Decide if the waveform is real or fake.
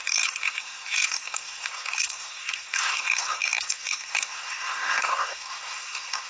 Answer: fake